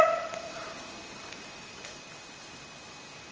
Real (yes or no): yes